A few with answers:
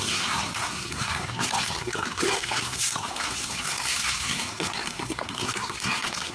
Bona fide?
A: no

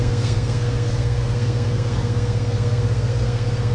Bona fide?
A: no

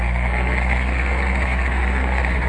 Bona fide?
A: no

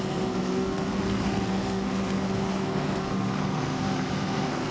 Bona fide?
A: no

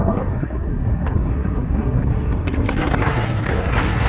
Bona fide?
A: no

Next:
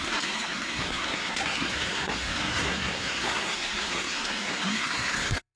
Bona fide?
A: no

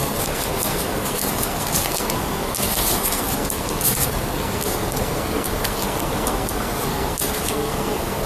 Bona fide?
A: no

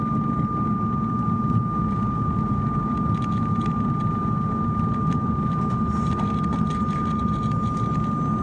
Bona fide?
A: yes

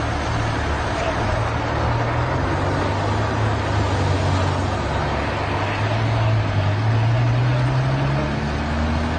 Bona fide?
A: yes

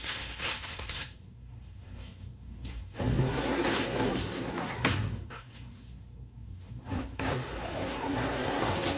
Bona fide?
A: no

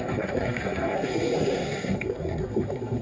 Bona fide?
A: no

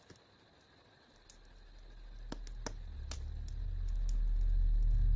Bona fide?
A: yes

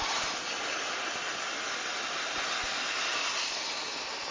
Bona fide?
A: yes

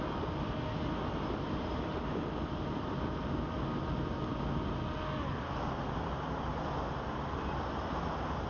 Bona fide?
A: yes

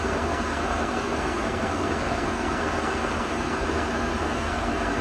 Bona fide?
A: no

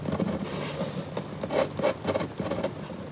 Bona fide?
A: yes